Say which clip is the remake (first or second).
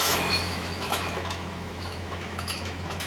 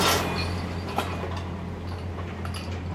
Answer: first